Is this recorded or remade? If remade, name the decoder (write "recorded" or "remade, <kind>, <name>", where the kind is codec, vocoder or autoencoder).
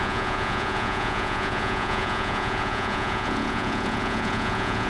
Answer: remade, vocoder, Vocos